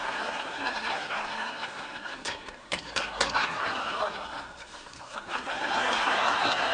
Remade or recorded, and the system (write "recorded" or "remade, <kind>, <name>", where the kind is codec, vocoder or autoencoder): remade, codec, SNAC